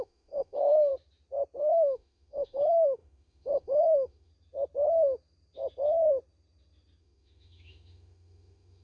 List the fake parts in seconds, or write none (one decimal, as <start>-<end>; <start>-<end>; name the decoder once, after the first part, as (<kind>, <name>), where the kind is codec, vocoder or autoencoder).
0.0-0.9 (autoencoder, DAC-VAE); 1.6-4.3; 7.0-8.8